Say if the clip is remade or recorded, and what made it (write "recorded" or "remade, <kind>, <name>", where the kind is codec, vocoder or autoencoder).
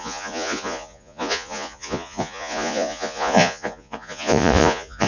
remade, vocoder, Vocos